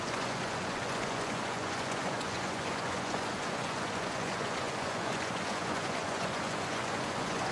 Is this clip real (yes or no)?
no